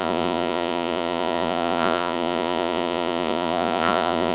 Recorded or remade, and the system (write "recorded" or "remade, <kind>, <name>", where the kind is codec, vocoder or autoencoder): remade, vocoder, Vocos